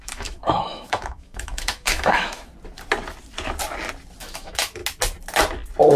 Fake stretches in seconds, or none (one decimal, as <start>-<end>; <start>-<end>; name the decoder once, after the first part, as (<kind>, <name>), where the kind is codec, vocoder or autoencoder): 0.0-2.5 (autoencoder, DAC-VAE); 4.2-4.8